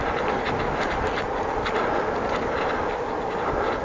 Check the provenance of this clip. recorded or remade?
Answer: recorded